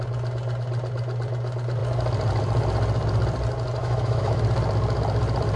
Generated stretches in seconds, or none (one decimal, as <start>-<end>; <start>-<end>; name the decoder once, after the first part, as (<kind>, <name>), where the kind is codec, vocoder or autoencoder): 3.8-4.4 (autoencoder, DAC-VAE)